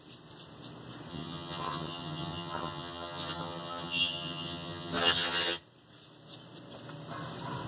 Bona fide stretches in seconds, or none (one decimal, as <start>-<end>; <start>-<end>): 0.0-1.1; 5.6-7.7